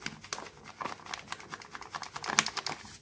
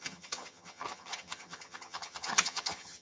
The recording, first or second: first